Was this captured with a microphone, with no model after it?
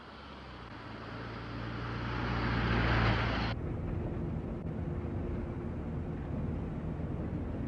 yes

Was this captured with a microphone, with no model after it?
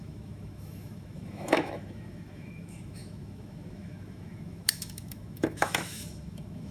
no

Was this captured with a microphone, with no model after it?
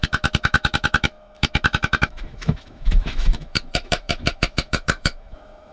no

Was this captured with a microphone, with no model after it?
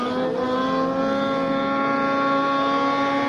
yes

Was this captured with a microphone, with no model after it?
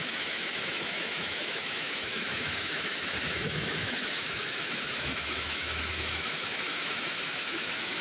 no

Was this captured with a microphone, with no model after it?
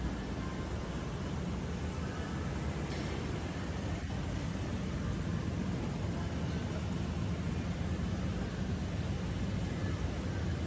yes